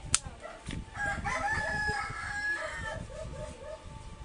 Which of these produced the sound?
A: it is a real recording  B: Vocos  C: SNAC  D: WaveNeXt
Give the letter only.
A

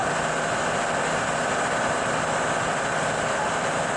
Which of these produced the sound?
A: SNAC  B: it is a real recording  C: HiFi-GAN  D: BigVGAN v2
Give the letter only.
B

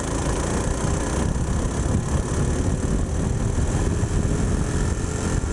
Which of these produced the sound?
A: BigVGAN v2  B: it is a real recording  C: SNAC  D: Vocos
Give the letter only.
B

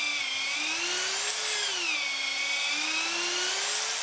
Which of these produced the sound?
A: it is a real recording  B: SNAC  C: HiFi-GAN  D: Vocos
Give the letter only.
A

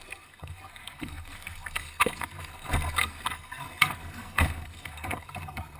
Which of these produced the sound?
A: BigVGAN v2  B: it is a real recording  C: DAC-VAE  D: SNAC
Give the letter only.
D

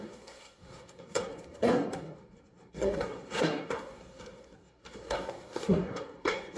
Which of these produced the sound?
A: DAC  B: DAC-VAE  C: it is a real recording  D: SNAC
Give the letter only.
D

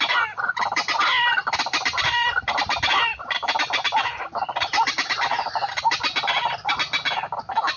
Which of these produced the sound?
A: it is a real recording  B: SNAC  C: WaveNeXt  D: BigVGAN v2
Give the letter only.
A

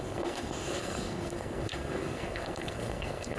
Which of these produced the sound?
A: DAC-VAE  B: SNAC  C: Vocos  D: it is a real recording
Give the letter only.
B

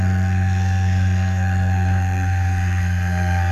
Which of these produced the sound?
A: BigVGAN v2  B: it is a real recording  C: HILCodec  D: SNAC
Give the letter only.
D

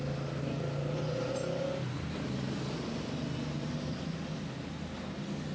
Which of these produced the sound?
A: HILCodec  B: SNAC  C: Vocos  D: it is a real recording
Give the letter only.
D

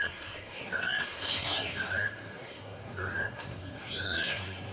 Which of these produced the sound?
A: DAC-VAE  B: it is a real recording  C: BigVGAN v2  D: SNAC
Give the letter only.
D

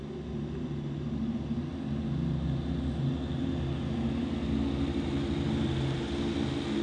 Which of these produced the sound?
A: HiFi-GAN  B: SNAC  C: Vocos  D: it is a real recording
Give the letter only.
D